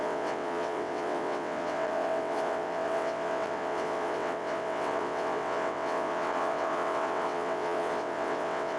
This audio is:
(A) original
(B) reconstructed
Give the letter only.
B